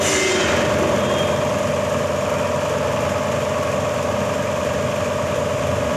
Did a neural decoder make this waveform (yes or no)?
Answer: no